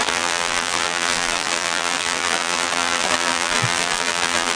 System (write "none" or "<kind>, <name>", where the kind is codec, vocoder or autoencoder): vocoder, BigVGAN v2